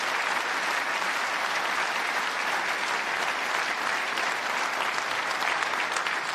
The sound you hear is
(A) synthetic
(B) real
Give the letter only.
B